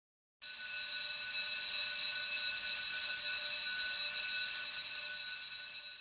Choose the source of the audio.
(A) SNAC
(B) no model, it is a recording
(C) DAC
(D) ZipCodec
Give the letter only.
B